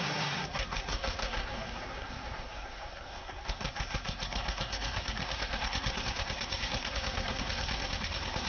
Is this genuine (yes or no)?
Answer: no